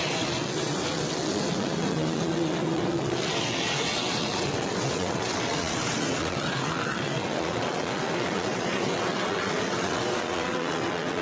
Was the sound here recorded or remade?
remade